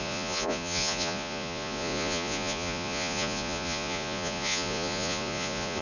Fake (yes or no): yes